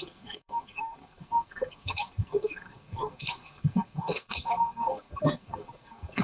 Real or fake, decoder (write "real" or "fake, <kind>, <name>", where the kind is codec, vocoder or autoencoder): fake, codec, SNAC